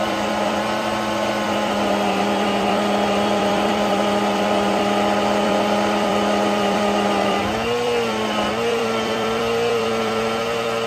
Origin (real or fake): fake